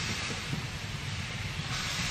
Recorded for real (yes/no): no